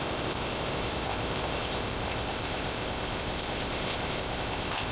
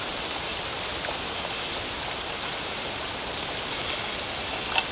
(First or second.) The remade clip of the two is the first